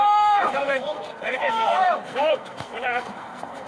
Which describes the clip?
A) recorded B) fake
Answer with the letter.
B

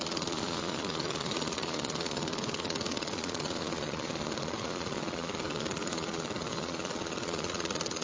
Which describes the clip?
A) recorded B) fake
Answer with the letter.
B